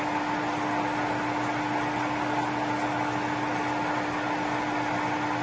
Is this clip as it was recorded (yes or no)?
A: yes